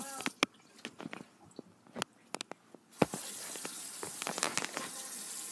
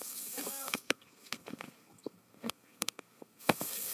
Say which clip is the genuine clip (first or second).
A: first